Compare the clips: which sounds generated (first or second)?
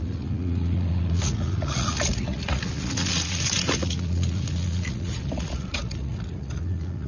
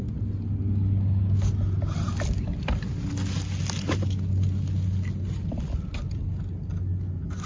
first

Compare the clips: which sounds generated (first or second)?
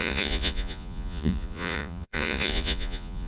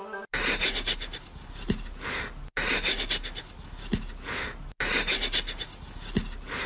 first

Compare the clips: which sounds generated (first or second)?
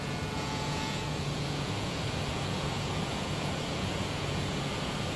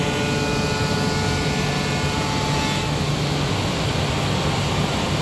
first